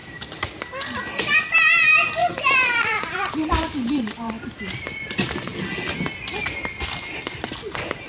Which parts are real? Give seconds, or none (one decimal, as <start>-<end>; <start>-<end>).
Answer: 0.0-2.2; 4.3-8.1